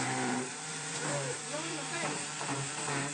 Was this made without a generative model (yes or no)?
no